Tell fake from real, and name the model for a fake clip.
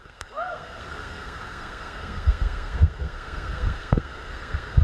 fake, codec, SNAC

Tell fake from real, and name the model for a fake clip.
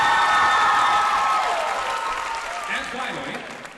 real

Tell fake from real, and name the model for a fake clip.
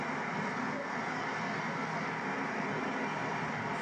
real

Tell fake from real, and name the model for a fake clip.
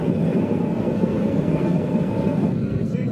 fake, codec, SNAC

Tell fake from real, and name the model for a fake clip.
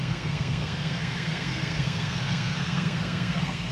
fake, codec, SNAC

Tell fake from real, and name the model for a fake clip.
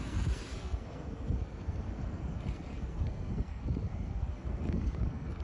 fake, codec, SNAC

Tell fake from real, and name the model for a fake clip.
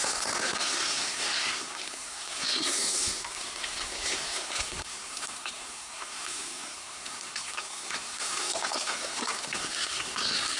fake, codec, SNAC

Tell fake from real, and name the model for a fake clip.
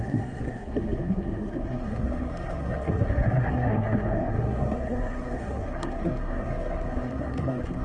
fake, codec, SNAC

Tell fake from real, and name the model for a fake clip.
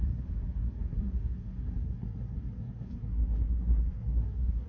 fake, codec, SNAC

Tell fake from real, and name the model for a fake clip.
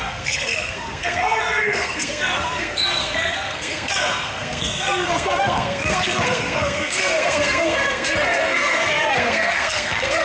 fake, codec, SNAC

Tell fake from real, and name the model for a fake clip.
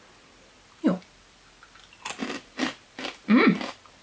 real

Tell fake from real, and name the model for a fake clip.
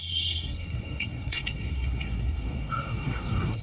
fake, codec, SNAC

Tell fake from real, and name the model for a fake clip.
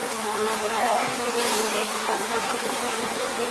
fake, codec, SNAC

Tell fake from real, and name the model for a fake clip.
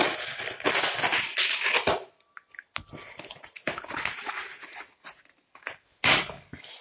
real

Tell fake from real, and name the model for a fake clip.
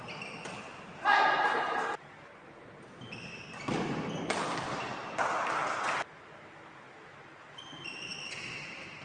real